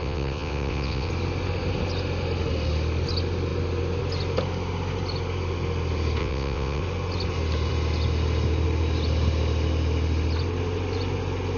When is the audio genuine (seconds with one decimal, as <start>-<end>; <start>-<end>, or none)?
1.1-6.2; 6.8-11.6